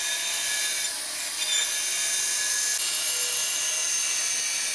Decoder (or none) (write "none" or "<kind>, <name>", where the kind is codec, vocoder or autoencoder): none